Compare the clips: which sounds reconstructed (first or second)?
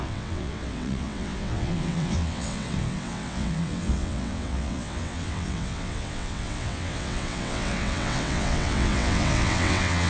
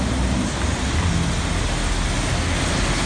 first